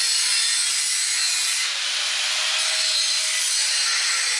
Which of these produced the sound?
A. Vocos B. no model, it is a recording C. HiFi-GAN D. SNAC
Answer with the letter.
B